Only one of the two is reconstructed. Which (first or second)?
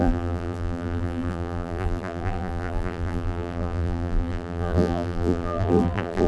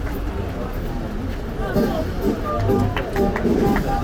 first